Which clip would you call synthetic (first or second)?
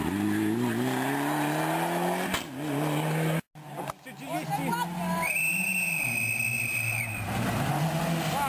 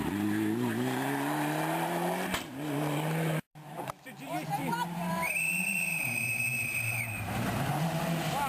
second